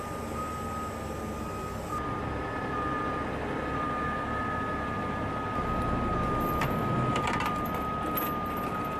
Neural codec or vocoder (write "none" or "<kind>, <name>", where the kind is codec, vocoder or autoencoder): none